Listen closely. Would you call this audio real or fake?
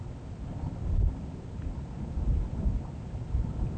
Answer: real